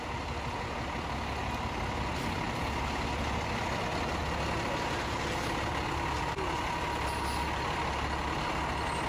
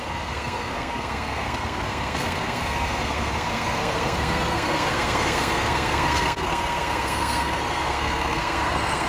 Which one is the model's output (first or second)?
second